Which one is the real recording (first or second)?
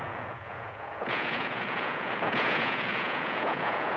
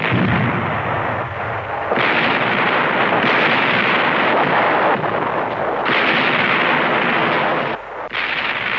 second